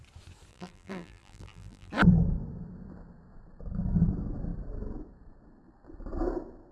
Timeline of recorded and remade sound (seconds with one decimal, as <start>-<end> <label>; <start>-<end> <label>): 0.0-0.5 recorded; 0.5-1.9 remade; 1.9-6.7 recorded

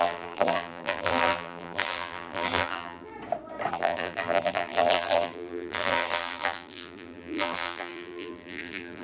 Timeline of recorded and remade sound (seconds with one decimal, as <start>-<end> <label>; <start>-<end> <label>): 0.0-3.1 remade; 3.1-3.7 recorded; 3.7-9.0 remade

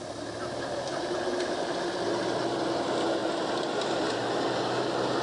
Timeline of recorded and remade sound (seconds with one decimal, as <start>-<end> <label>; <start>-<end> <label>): 0.0-0.9 recorded; 0.9-1.8 remade; 1.8-3.2 recorded; 3.2-4.0 remade; 4.0-5.2 recorded

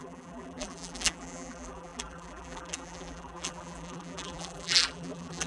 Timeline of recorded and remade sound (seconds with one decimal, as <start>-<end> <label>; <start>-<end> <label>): 0.0-5.5 remade

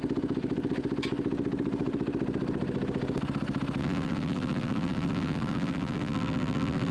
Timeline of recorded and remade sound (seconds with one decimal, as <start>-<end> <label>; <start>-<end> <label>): 0.0-3.8 recorded; 3.8-6.9 remade

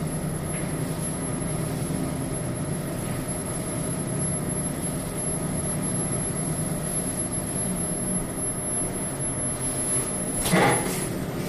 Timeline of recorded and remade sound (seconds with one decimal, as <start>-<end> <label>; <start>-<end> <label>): 0.0-3.4 recorded; 3.4-3.9 remade; 3.9-11.5 recorded

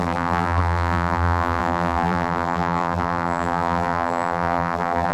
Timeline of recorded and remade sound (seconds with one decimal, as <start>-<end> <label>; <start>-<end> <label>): 0.0-5.1 remade